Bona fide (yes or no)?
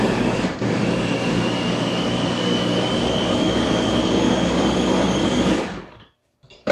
no